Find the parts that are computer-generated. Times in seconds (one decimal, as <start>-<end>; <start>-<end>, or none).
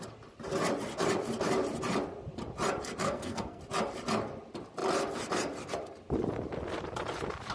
3.0-3.6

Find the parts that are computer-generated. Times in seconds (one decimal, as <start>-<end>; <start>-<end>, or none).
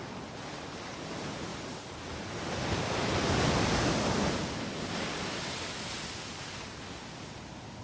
none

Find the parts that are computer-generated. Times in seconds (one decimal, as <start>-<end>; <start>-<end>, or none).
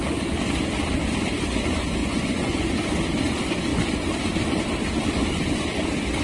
2.0-2.7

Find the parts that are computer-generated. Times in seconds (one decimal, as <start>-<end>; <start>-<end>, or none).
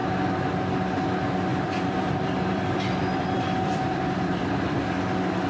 1.5-4.8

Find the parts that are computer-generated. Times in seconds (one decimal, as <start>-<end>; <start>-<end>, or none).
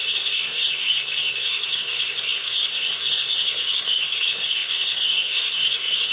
0.0-6.1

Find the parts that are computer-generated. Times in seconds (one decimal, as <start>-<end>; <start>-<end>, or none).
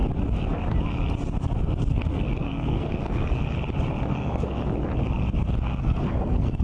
1.9-3.4; 4.1-4.6; 5.8-6.6